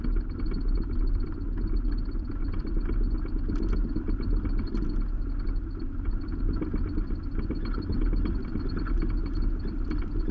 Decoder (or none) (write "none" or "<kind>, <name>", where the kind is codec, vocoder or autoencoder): none